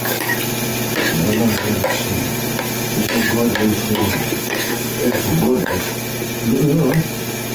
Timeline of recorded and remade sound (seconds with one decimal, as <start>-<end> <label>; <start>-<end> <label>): 0.0-4.4 recorded; 4.4-5.8 remade; 5.8-7.5 recorded